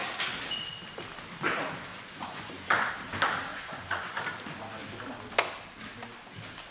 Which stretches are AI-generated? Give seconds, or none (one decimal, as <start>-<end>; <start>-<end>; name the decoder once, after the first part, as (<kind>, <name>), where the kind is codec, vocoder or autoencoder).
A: 1.9-2.9 (vocoder, Vocos); 3.5-4.2